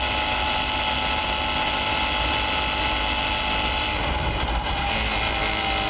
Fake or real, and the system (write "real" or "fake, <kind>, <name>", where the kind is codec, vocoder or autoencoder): real